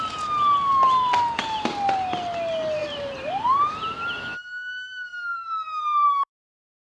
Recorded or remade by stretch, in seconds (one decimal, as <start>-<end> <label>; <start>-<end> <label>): 0.0-2.8 recorded; 2.8-3.3 remade; 3.3-5.1 recorded; 5.1-6.3 remade; 6.3-6.9 recorded